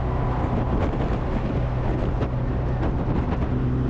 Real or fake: real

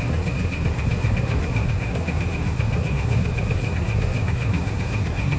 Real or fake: fake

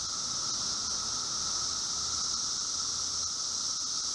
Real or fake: real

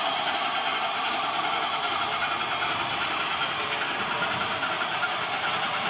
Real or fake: real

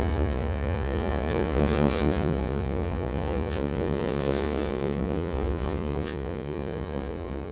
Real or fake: fake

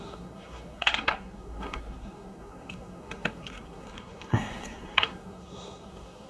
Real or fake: fake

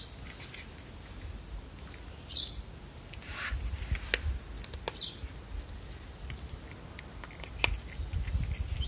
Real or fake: real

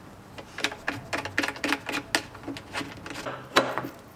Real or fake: real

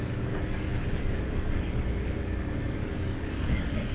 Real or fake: fake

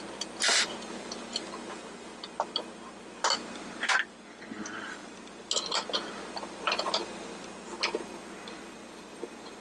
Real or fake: real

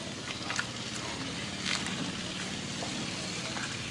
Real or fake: real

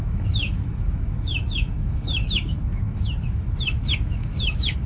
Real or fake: fake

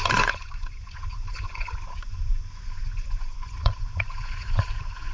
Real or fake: fake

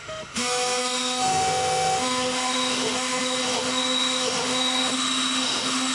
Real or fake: fake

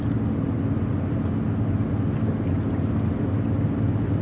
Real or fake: real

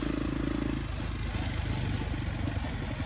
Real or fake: real